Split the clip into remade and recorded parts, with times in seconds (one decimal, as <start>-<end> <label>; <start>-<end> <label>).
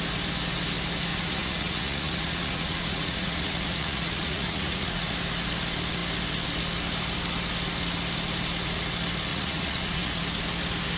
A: 0.0-1.1 recorded; 1.1-5.1 remade; 5.1-9.3 recorded; 9.3-10.2 remade; 10.2-11.0 recorded